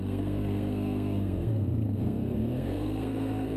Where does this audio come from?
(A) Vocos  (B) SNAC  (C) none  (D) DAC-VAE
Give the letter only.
B